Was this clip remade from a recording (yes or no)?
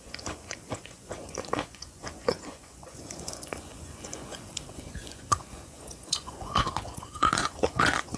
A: yes